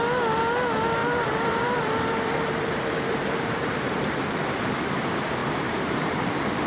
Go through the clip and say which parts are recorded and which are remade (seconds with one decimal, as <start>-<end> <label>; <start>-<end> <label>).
0.0-1.0 recorded; 1.0-4.6 remade; 4.6-5.4 recorded; 5.4-6.3 remade; 6.3-6.7 recorded